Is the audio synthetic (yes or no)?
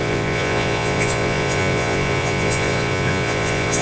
yes